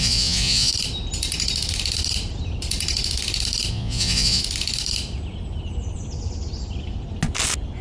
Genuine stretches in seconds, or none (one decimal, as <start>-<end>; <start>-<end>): 0.7-3.7; 4.4-7.8